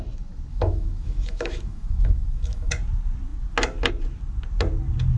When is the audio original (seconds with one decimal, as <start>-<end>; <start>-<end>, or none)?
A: 0.0-0.5; 2.7-5.2